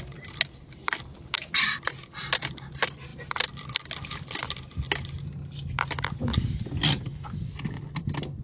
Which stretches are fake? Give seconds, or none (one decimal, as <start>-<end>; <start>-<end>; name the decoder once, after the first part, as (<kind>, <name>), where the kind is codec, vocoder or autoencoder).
none